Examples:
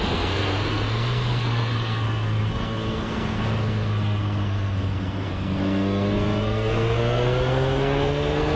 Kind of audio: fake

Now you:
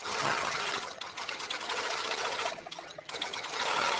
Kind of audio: fake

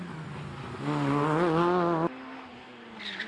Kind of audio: real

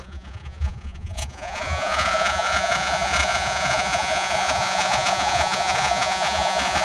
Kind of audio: fake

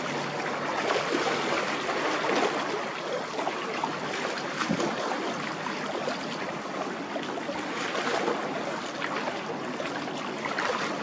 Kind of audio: real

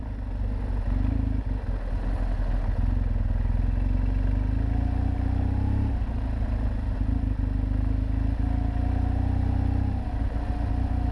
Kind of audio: real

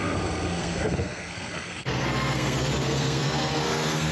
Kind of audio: fake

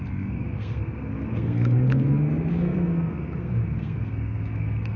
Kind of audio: fake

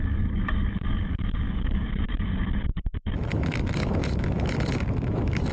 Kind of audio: fake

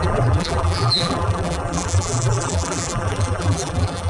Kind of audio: fake